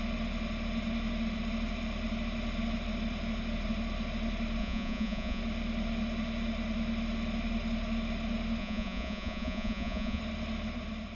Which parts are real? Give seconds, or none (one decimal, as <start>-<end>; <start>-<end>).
0.0-4.6; 5.4-8.6; 10.2-11.1